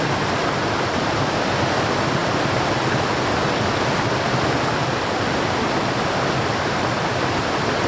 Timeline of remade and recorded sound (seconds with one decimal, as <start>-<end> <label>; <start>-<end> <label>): 0.0-7.9 recorded